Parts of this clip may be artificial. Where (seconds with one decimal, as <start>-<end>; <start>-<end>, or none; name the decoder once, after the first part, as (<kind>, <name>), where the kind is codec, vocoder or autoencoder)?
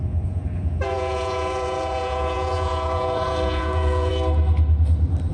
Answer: 0.0-4.1 (vocoder, Vocos)